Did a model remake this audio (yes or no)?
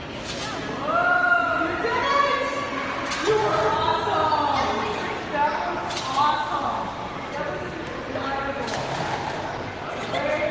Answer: no